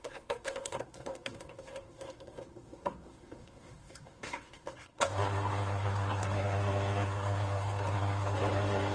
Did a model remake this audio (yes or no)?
yes